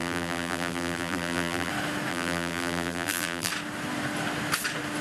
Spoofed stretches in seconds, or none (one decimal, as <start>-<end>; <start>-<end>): 0.0-1.7; 2.1-3.5